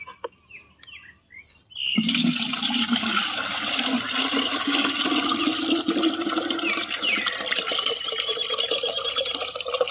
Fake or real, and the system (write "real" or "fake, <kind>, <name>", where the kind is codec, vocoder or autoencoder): real